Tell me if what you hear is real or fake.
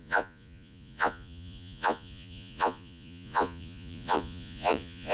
fake